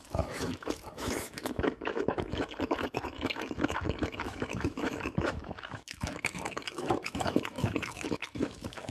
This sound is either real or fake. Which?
fake